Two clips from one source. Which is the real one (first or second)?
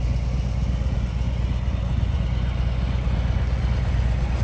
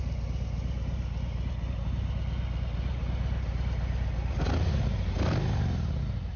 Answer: second